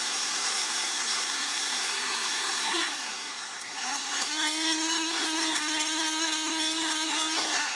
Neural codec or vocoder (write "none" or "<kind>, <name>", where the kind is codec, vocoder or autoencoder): codec, SNAC